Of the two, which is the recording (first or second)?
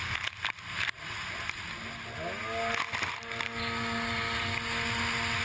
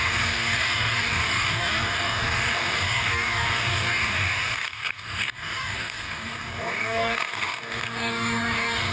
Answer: first